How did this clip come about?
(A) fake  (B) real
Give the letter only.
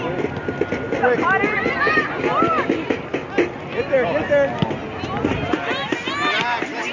B